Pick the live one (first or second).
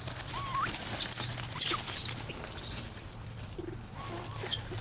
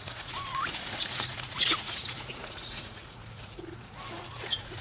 first